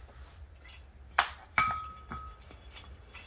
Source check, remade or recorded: recorded